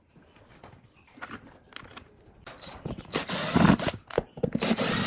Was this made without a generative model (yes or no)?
yes